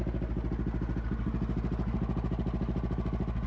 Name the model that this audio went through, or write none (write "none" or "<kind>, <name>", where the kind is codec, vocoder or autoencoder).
none